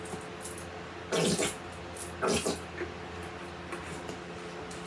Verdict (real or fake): real